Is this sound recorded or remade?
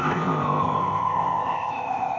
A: remade